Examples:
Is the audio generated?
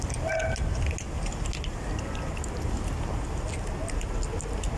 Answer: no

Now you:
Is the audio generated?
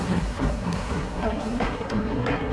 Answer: yes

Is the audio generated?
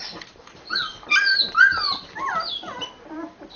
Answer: yes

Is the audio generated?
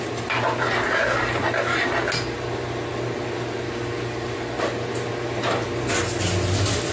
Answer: no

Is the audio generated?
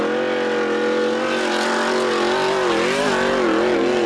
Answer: no